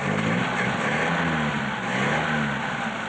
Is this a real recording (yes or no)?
yes